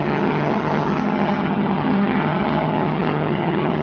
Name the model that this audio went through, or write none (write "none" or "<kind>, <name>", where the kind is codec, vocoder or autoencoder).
vocoder, HiFi-GAN